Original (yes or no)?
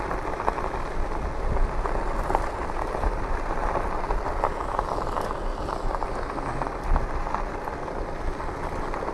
yes